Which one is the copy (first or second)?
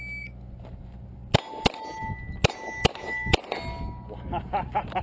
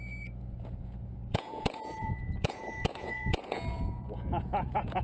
second